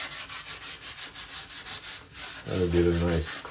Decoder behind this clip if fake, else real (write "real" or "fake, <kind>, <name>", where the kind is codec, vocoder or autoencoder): real